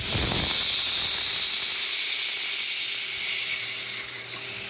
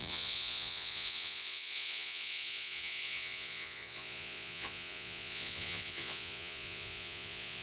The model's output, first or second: second